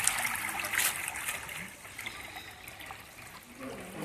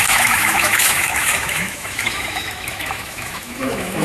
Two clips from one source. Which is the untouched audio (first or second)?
first